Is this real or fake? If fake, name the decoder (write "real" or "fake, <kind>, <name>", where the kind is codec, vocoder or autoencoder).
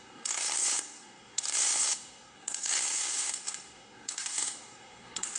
fake, codec, SNAC